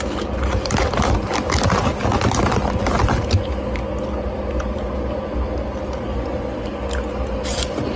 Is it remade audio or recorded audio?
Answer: recorded